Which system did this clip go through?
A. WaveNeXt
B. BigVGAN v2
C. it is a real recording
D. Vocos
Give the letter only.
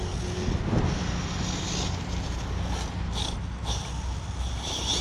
C